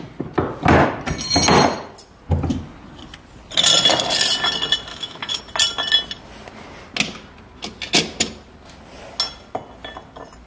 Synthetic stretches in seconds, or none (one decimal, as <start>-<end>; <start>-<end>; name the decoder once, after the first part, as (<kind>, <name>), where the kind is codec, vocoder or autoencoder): 4.9-5.4 (autoencoder, DAC-VAE)